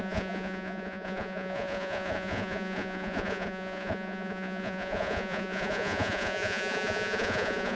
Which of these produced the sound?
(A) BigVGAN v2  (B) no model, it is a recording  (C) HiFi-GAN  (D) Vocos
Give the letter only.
D